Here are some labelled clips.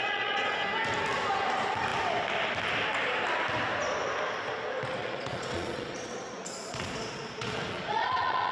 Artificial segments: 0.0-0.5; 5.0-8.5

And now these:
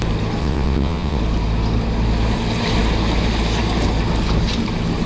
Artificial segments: 0.4-1.2

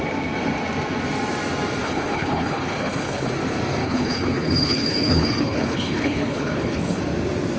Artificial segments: 1.8-3.3; 3.8-7.0

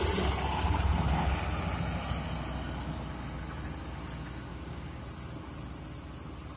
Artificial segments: 4.5-5.0

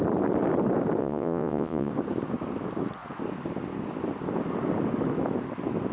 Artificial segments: 1.0-1.9

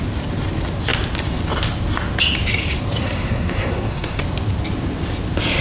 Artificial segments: 3.0-4.2